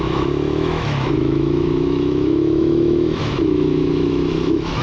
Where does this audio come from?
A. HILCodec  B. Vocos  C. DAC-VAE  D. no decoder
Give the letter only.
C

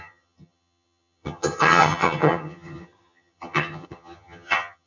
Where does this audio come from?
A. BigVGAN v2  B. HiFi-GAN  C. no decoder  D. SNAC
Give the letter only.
B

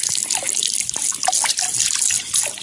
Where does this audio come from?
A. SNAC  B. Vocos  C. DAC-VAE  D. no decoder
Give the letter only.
D